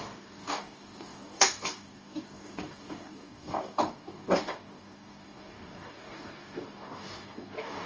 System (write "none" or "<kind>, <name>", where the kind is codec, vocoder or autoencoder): codec, DAC